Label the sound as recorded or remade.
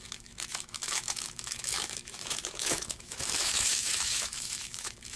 remade